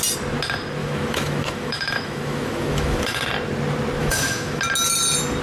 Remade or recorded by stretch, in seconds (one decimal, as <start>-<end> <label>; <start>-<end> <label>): 0.0-0.8 recorded; 0.8-3.3 remade; 3.3-4.0 recorded; 4.0-4.6 remade; 4.6-5.4 recorded